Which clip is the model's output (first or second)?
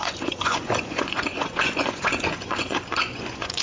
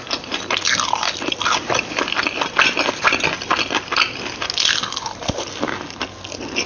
first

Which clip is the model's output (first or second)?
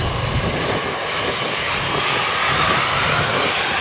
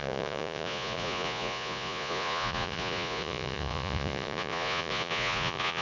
second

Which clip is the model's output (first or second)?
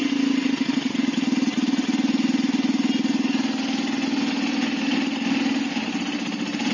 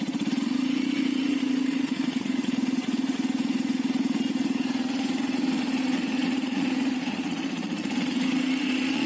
second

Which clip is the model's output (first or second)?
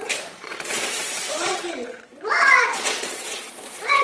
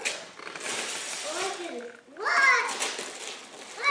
first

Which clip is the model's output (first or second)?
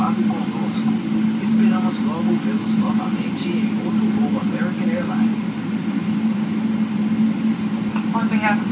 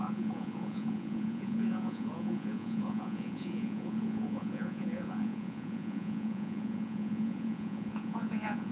second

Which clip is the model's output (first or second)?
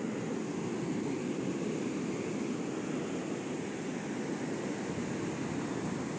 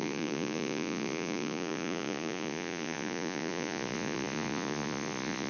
second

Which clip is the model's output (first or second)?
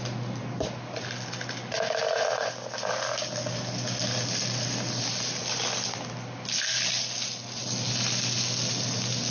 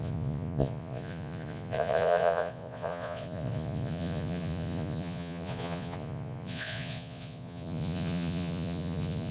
second